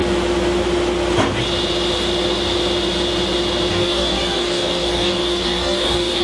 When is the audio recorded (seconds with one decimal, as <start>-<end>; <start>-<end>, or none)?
0.0-3.7